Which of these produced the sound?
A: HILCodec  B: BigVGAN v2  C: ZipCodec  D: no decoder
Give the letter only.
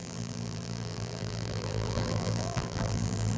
B